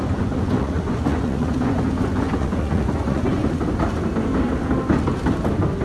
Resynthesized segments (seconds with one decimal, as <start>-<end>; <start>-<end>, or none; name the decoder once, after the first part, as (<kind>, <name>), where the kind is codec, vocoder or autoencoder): 0.0-3.5 (vocoder, Vocos)